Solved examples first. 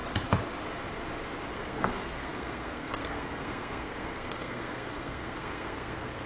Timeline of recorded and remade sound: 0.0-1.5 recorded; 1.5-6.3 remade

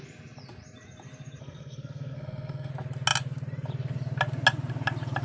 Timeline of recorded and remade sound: 0.0-1.4 recorded; 1.4-2.7 remade; 2.7-5.2 recorded